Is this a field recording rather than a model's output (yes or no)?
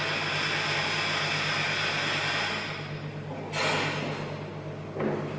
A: yes